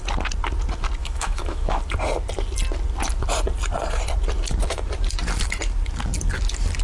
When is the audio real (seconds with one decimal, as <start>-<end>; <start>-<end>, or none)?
0.0-1.0; 1.8-6.8